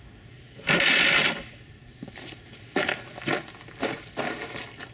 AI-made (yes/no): no